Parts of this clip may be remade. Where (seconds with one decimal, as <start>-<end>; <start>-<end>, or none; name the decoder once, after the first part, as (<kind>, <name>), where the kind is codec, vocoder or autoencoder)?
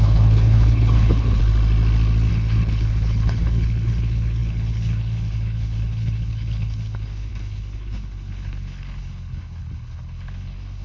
0.0-1.4 (codec, HILCodec); 2.3-10.8